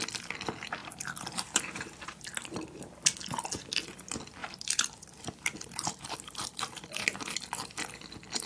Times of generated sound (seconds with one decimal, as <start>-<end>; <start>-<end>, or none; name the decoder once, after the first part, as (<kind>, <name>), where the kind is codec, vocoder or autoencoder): 0.8-2.2 (vocoder, BigVGAN v2); 4.4-7.3